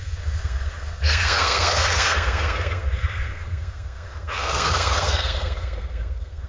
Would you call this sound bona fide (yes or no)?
no